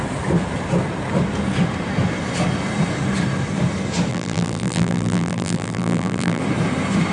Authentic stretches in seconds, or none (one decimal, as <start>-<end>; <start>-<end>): 0.0-4.1; 6.4-7.1